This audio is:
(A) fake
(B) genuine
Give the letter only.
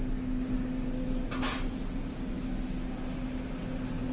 B